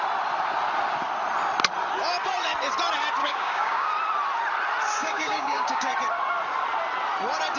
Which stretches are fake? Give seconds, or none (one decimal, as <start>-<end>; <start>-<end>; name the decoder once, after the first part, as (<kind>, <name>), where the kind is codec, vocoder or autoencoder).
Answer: 3.2-3.9 (codec, DAC); 5.0-5.9